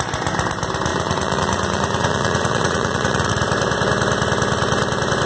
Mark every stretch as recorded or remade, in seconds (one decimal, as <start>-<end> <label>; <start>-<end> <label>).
0.0-0.9 recorded; 0.9-3.3 remade; 3.3-5.3 recorded

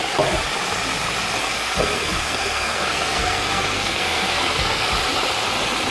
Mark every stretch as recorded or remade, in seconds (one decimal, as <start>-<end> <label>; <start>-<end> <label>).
0.0-1.4 recorded; 1.4-4.9 remade; 4.9-5.9 recorded

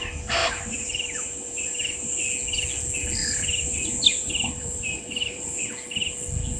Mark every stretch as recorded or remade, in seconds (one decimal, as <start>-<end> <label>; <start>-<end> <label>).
0.0-0.4 recorded; 0.4-2.1 remade; 2.1-3.2 recorded; 3.2-5.7 remade; 5.7-6.6 recorded

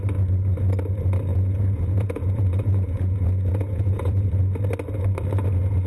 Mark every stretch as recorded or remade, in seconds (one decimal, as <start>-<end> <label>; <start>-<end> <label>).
0.0-1.3 recorded; 1.3-4.4 remade; 4.4-5.9 recorded

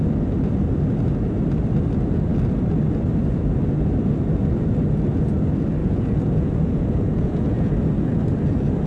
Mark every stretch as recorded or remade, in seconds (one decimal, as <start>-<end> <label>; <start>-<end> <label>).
0.0-5.8 recorded; 5.8-7.7 remade; 7.7-8.9 recorded

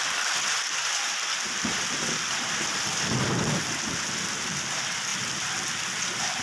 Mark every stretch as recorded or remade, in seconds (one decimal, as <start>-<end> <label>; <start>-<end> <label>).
0.0-6.4 recorded